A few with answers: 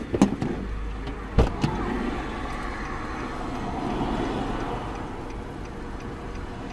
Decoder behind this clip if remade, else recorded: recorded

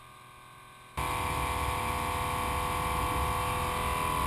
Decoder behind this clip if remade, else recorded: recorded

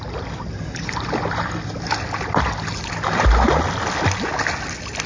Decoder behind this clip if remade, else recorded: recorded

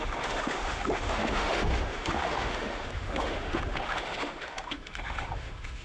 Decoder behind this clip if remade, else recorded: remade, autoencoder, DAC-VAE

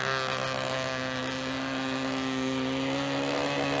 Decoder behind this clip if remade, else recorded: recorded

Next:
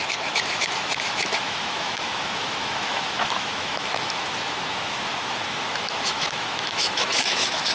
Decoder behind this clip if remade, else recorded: remade, autoencoder, DAC-VAE